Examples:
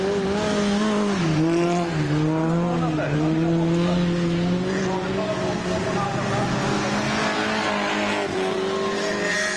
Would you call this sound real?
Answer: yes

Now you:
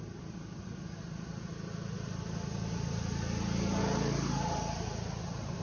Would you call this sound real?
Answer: yes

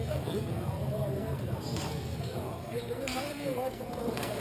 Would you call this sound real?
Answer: no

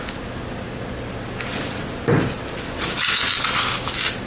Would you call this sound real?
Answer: yes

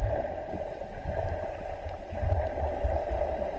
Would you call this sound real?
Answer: yes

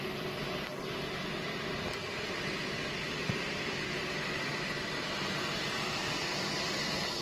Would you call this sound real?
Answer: yes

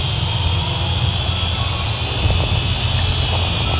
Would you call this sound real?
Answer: yes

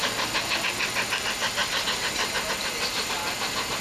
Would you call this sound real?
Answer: yes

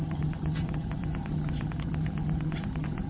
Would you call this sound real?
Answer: no